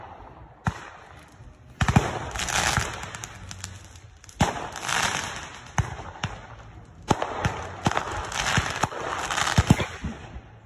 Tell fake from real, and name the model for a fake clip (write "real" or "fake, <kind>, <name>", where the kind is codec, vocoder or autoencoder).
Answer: real